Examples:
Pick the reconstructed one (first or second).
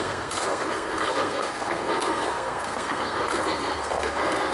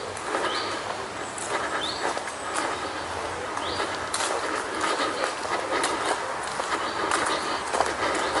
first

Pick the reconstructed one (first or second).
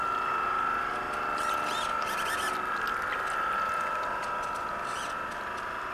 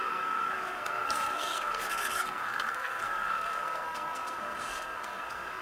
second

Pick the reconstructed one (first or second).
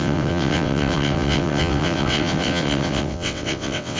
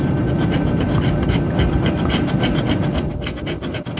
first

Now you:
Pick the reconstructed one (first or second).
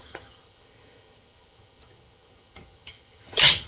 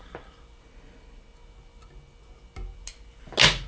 first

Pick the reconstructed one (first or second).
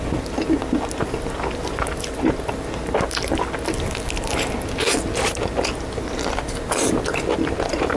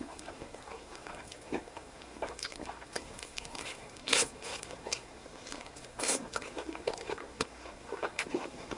second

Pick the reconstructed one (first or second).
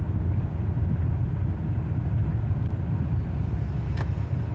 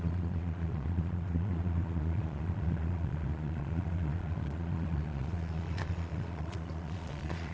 second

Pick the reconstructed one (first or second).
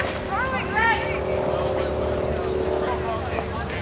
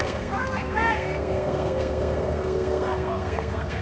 second